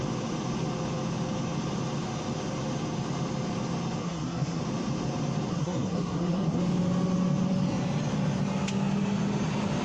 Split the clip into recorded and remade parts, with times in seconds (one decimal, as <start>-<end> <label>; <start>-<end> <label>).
0.0-4.0 recorded; 4.0-4.6 remade; 4.6-5.5 recorded; 5.5-6.6 remade; 6.6-9.8 recorded